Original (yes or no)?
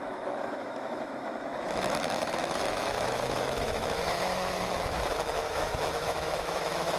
no